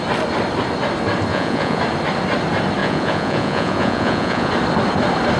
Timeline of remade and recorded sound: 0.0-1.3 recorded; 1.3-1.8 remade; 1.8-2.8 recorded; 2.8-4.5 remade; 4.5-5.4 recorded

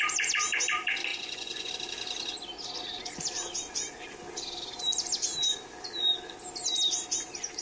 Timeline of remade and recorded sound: 0.0-1.1 recorded; 1.1-1.7 remade; 1.7-7.6 recorded

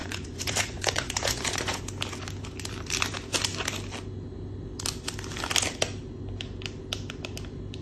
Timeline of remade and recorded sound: 0.0-1.8 remade; 1.8-7.8 recorded